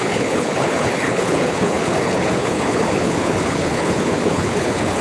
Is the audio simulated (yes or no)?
yes